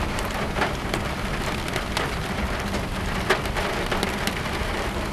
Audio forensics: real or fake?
real